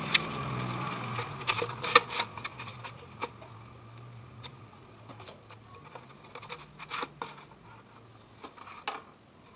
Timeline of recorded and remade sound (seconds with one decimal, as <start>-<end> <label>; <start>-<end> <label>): 0.0-9.6 recorded